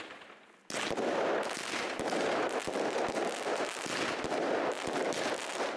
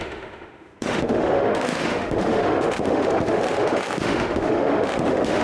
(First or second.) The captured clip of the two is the first